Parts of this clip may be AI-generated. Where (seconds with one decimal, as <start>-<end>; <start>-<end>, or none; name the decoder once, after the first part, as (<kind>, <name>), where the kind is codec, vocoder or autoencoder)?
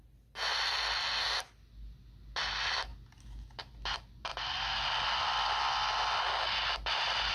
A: 0.5-1.1 (vocoder, BigVGAN v2)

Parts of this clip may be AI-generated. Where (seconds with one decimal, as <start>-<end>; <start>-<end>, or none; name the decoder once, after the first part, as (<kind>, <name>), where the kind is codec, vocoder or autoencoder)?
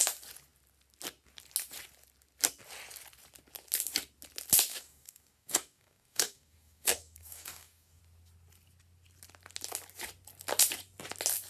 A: 4.7-8.0 (codec, DAC)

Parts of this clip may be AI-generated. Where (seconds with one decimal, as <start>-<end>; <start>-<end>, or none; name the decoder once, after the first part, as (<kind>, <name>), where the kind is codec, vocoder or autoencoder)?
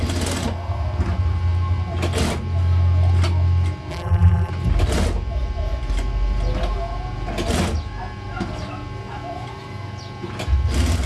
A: 3.9-4.5 (vocoder, BigVGAN v2)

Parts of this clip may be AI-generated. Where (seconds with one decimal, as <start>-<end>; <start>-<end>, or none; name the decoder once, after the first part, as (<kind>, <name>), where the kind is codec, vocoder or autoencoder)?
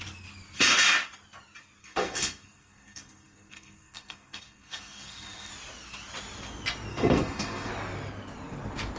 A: 1.8-5.5 (codec, SNAC); 6.9-7.7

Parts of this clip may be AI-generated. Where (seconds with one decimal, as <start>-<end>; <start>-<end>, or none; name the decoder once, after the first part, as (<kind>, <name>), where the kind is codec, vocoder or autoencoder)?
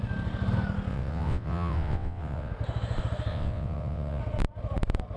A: 0.9-2.5 (vocoder, WaveNeXt); 3.3-4.2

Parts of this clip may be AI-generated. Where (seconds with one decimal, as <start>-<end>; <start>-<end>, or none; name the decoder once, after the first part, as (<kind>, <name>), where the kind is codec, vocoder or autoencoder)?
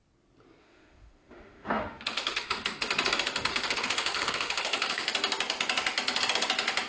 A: 0.6-2.9 (autoencoder, DAC-VAE); 3.5-5.1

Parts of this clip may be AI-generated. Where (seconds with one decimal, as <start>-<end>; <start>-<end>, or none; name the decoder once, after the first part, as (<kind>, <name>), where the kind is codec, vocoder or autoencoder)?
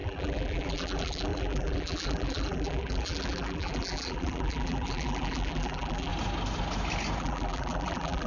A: 0.0-6.1 (vocoder, BigVGAN v2); 7.2-8.3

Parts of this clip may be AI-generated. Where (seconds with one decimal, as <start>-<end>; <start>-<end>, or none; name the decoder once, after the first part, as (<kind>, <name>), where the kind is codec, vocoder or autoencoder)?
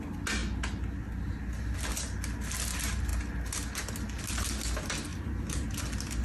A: 5.1-5.8 (vocoder, BigVGAN v2)